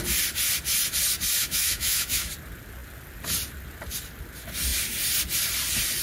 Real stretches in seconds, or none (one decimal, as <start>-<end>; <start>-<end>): 0.0-1.4; 2.3-6.0